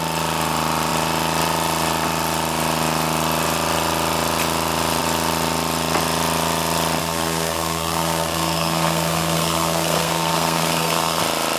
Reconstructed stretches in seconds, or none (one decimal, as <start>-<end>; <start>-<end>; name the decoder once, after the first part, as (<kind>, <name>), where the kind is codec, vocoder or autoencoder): 7.0-11.2 (codec, SNAC)